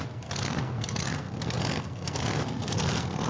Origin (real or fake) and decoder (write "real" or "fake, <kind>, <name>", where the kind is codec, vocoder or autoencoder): fake, codec, SNAC